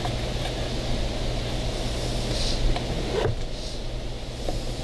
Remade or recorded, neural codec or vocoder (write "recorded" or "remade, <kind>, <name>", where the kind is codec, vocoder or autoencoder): recorded